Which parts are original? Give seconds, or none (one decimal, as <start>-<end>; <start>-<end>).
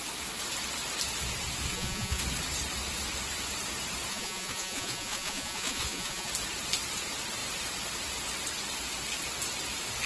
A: 0.0-1.7; 2.2-4.1; 6.3-10.1